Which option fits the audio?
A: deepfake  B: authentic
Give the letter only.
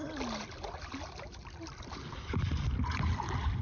B